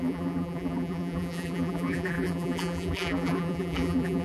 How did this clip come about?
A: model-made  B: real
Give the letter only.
A